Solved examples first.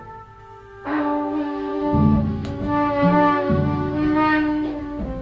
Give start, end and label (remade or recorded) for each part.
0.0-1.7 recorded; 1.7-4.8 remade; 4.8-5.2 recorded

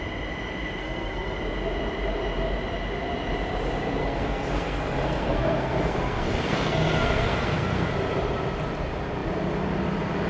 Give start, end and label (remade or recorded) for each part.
0.0-0.8 recorded; 0.8-1.4 remade; 1.4-4.0 recorded; 4.0-7.9 remade; 7.9-10.3 recorded

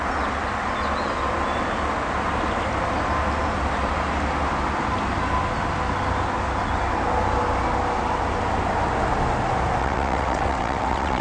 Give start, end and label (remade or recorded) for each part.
0.0-9.8 recorded; 9.8-11.2 remade

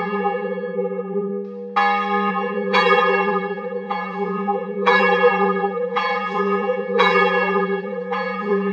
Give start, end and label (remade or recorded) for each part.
0.0-1.3 remade; 1.3-2.3 recorded; 2.3-8.7 remade

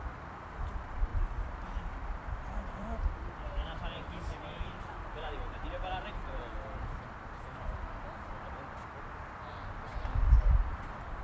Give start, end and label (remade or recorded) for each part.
0.0-1.1 recorded; 1.1-6.1 remade; 6.1-9.9 recorded; 9.9-11.2 remade